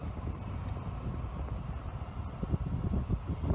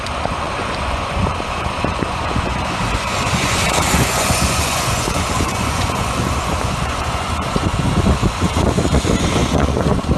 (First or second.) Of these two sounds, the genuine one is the first